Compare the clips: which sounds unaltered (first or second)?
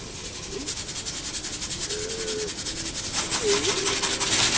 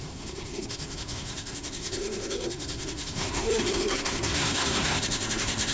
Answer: first